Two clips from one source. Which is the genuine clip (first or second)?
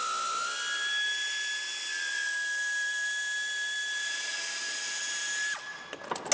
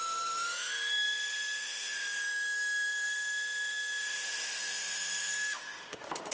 first